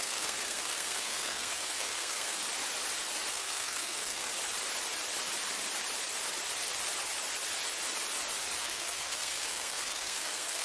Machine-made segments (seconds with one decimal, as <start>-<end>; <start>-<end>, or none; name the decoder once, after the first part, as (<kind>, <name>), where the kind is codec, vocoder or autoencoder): 0.0-2.4 (codec, SNAC); 3.3-4.3; 8.6-10.6